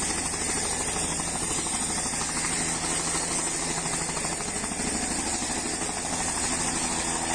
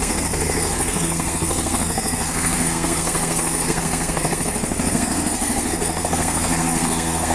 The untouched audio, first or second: first